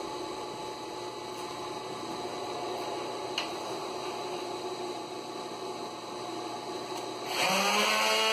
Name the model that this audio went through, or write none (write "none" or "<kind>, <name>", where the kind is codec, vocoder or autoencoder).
none